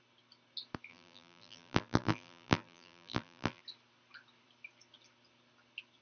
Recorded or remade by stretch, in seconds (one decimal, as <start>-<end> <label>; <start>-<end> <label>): 0.0-0.9 recorded; 0.9-3.6 remade; 3.6-6.0 recorded